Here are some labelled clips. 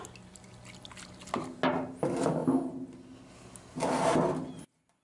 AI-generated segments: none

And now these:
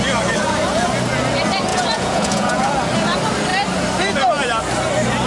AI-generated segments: 1.7-2.7 (vocoder, Vocos)

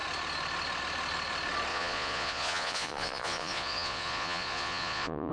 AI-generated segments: 1.7-5.3 (vocoder, Vocos)